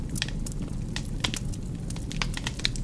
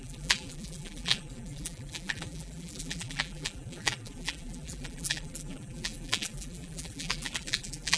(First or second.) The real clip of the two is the first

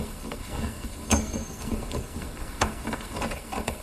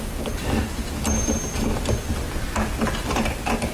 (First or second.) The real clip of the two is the second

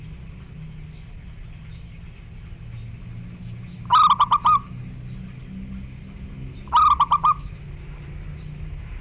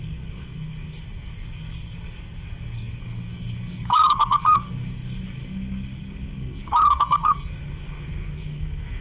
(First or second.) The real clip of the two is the first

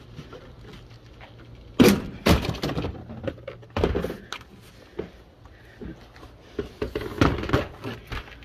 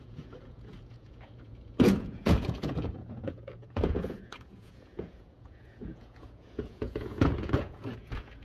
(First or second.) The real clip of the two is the first